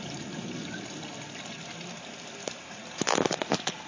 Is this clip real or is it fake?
real